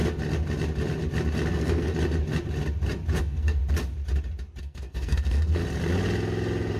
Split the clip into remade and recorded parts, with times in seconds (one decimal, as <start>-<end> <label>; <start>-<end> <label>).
0.0-1.5 recorded; 1.5-1.9 remade; 1.9-3.2 recorded; 3.2-3.6 remade; 3.6-4.6 recorded; 4.6-5.6 remade; 5.6-6.8 recorded